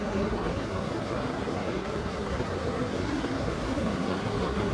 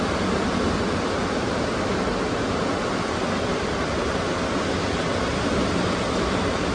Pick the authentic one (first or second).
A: second